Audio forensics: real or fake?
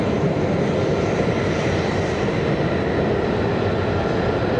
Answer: real